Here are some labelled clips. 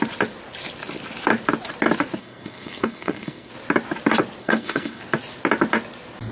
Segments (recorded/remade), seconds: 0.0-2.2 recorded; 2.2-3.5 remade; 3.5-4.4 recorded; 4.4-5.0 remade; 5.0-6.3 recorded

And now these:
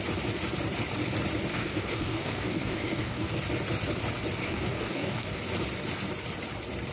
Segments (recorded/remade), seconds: 0.0-1.5 recorded; 1.5-3.4 remade; 3.4-4.4 recorded; 4.4-5.4 remade; 5.4-6.9 recorded